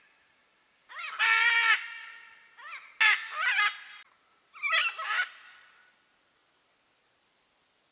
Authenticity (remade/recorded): recorded